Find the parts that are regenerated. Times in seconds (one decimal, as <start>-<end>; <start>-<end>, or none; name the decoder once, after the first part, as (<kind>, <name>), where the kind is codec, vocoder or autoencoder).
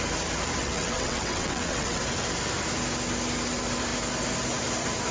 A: 0.6-2.0 (vocoder, WaveNeXt)